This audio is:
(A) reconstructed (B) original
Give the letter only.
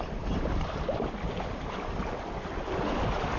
B